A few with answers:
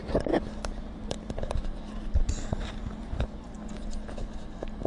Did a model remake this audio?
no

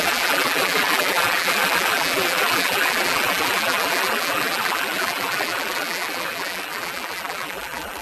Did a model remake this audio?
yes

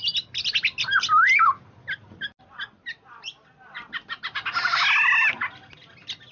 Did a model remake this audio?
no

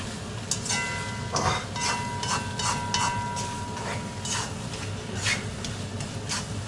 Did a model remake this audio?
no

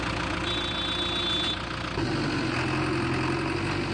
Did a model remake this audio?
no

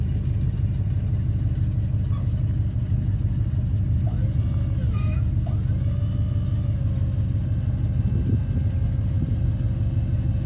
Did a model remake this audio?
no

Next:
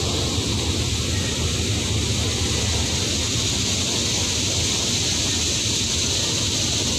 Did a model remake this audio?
no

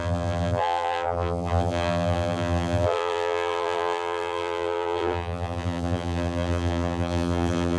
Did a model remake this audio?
yes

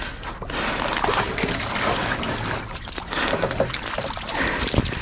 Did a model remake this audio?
no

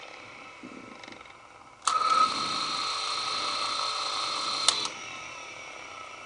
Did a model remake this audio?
no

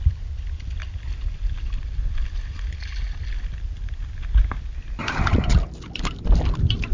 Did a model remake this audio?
no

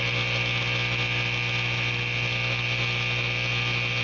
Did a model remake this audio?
no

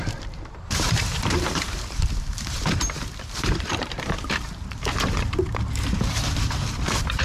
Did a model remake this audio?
yes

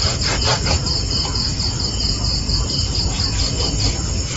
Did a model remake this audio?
no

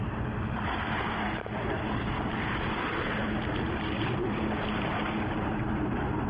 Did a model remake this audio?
yes